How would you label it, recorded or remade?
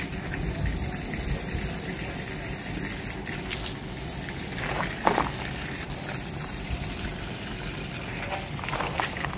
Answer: remade